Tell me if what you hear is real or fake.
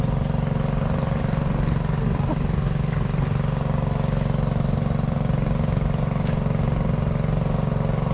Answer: real